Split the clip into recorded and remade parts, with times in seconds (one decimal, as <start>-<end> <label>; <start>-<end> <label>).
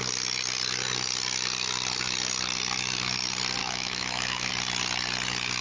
0.0-3.6 recorded; 3.6-4.5 remade; 4.5-5.6 recorded